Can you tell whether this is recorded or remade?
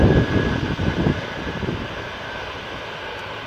recorded